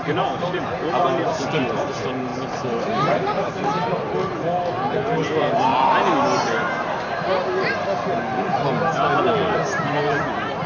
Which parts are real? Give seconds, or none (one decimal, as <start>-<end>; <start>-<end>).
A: 5.7-10.0